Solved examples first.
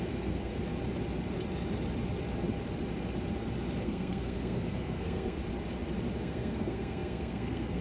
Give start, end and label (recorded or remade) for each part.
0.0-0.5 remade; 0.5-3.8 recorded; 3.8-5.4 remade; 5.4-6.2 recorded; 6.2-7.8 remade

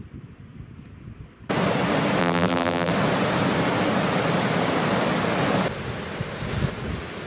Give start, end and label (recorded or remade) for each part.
0.0-2.2 recorded; 2.2-2.9 remade; 2.9-7.3 recorded